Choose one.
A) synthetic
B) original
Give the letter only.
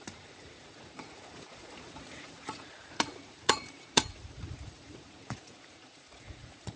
A